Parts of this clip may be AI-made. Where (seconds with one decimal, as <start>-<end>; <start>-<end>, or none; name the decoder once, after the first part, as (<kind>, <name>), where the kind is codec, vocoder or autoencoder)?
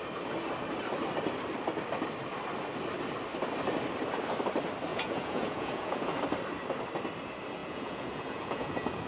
4.9-6.1 (vocoder, Vocos); 7.6-9.1